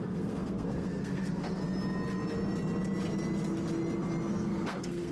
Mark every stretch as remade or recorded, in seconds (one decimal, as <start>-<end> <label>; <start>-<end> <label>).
0.0-1.6 remade; 1.6-4.3 recorded; 4.3-5.1 remade